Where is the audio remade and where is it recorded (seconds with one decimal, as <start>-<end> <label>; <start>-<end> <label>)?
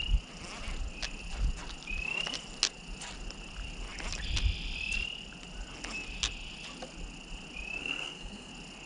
0.0-7.8 recorded; 7.8-8.5 remade; 8.5-8.9 recorded